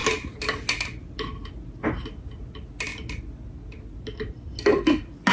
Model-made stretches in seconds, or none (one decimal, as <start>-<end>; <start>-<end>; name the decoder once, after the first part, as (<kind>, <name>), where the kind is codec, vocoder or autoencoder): none